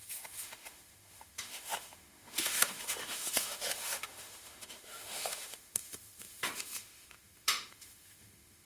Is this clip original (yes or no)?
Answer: no